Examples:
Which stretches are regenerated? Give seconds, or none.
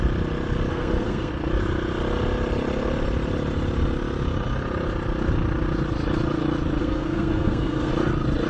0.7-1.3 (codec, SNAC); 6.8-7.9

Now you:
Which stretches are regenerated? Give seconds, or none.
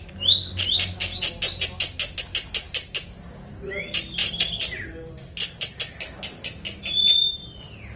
none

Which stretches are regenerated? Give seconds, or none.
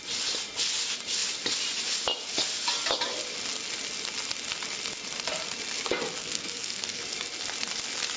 6.2-7.0 (codec, SNAC)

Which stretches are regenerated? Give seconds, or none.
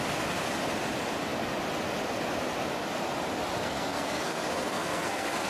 3.6-5.5 (codec, SNAC)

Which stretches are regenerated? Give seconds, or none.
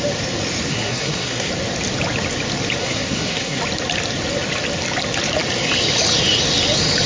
0.7-1.5 (codec, SNAC); 2.8-3.6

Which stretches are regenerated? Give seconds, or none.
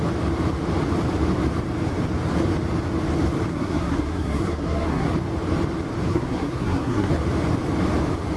3.5-5.1 (codec, SNAC); 6.1-7.1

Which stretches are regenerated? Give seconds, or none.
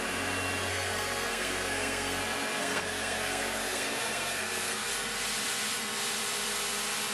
0.7-2.2 (codec, SNAC); 2.6-4.9